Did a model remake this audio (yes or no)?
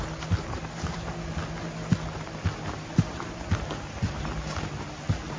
no